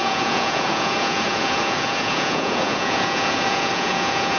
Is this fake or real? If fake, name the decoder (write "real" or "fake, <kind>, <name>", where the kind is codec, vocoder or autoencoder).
fake, vocoder, Vocos